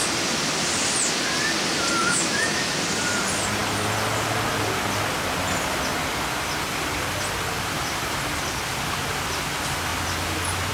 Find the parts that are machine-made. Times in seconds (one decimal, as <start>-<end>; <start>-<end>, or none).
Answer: 2.0-2.7